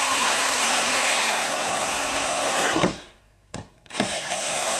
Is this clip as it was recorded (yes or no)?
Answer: no